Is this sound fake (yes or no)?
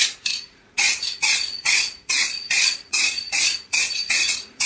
yes